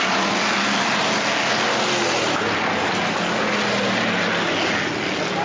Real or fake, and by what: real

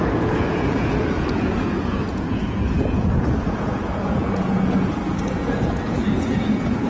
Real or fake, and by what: fake, vocoder, Vocos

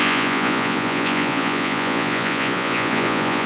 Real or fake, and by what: fake, vocoder, Vocos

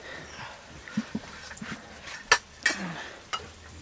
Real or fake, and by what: real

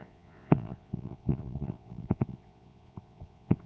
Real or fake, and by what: fake, vocoder, Vocos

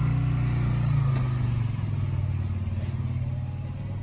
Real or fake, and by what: real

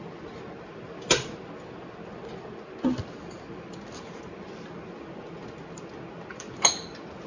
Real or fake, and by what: real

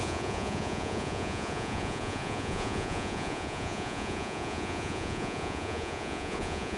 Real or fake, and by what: fake, vocoder, Vocos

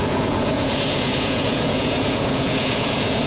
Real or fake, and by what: fake, vocoder, Vocos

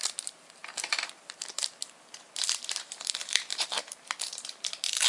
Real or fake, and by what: real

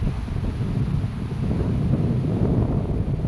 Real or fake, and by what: real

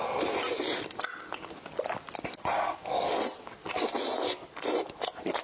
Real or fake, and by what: real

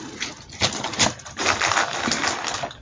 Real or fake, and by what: real